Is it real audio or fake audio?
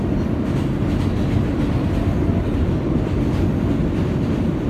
real